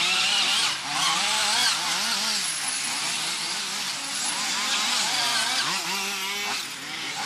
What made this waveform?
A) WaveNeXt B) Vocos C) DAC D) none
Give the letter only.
D